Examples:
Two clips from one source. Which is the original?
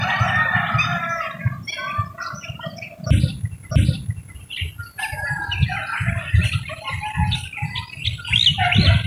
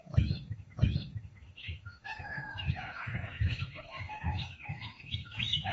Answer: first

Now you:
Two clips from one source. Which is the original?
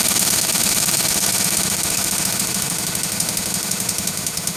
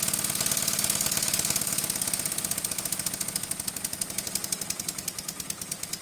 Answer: second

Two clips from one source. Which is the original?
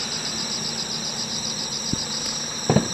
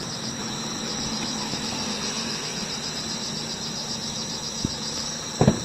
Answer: first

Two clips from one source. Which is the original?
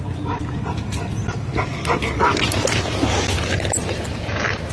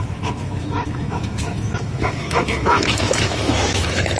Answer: first